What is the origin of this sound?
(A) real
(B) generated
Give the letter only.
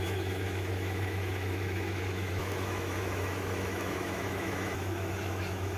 B